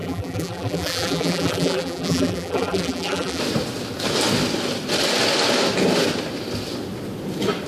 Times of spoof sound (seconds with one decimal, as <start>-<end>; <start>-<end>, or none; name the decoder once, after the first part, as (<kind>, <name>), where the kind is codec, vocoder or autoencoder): 0.0-3.4 (vocoder, BigVGAN v2)